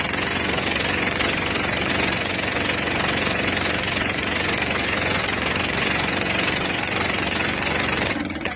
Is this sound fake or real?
fake